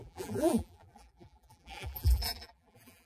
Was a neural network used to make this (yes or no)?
yes